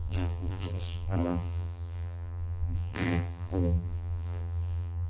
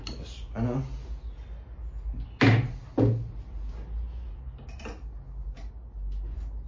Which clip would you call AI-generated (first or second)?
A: first